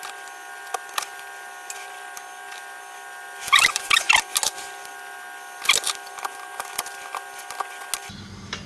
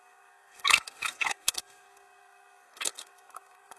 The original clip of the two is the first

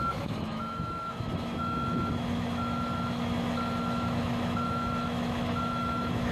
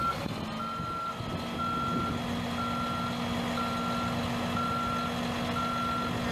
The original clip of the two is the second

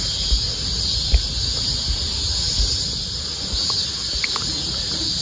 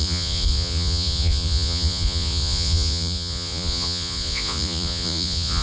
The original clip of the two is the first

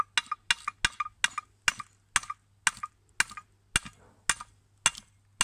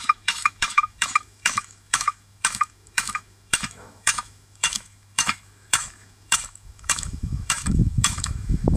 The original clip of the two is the first